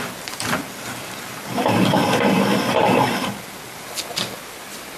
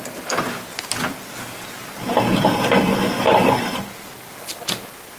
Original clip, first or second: second